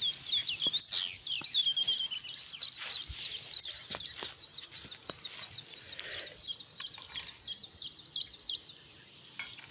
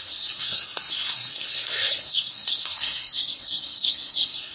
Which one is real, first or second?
first